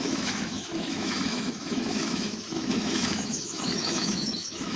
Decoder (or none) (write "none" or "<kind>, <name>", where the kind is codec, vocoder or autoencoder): autoencoder, DAC-VAE